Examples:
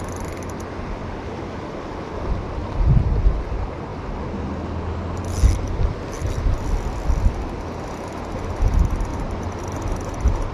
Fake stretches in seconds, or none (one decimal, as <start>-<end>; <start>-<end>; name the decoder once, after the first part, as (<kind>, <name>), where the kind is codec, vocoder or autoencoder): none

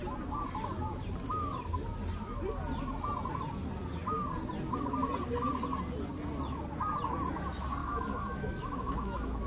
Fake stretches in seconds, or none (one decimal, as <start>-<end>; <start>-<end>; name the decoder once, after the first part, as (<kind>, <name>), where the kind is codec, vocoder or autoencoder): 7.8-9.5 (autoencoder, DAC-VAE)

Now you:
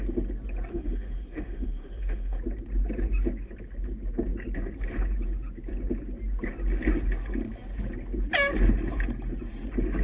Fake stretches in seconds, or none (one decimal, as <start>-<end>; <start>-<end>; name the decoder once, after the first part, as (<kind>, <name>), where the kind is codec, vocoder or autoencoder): 0.7-2.4 (autoencoder, DAC-VAE)

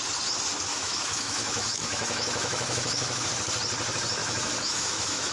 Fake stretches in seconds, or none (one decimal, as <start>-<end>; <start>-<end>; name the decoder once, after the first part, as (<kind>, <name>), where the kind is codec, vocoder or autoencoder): 0.7-3.3 (autoencoder, DAC-VAE); 4.2-5.3

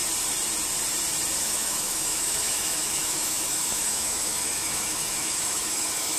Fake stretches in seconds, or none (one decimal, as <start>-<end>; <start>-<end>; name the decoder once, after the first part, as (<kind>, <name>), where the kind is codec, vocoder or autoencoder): 1.4-6.2 (autoencoder, DAC-VAE)

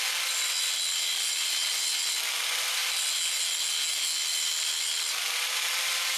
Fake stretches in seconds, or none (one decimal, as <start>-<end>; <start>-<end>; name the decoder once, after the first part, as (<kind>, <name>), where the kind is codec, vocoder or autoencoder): none